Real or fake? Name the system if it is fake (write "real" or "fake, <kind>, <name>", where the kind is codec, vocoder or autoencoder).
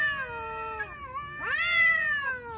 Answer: real